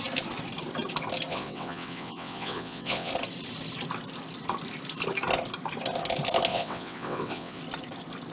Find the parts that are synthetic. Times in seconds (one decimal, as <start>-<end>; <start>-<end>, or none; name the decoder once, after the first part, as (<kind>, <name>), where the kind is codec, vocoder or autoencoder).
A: 1.3-3.1 (vocoder, WaveNeXt); 6.5-7.6

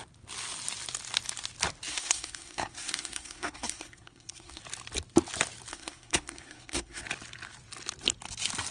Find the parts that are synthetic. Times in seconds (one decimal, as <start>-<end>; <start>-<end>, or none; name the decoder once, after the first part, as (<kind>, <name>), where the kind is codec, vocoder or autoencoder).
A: 1.9-4.6 (codec, SNAC); 5.7-7.0

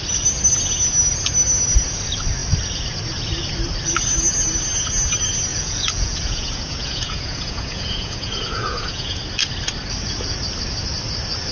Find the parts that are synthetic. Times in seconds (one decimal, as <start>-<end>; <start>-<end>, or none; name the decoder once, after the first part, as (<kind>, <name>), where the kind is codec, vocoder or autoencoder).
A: 5.5-9.2 (vocoder, Vocos)

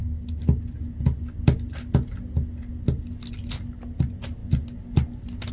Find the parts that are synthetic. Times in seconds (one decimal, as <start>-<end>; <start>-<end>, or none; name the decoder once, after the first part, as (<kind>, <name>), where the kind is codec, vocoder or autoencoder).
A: none